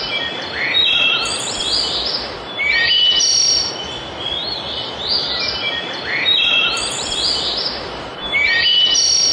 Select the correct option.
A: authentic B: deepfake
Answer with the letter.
A